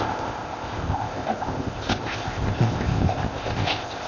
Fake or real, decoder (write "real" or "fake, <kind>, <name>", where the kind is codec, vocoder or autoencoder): fake, codec, ZipCodec